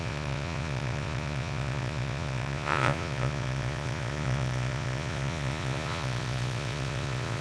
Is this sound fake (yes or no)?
yes